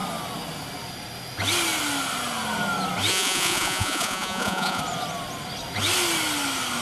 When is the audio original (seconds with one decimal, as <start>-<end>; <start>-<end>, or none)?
0.0-3.1; 4.8-6.8